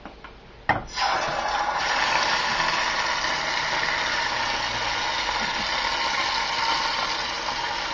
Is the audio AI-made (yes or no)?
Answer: no